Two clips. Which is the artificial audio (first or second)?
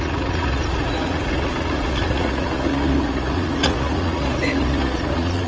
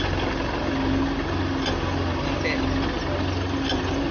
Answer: first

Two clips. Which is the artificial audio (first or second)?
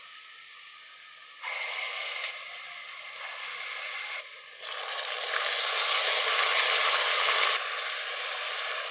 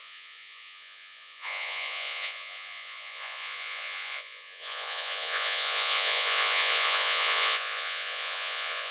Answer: second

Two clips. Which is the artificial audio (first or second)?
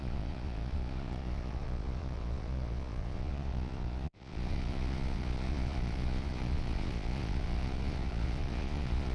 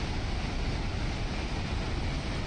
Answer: first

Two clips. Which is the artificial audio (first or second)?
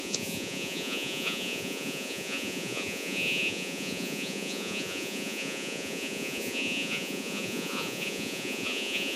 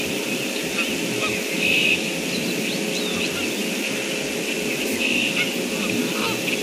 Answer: first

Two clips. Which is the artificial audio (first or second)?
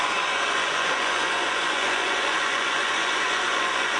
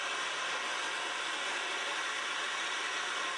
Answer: first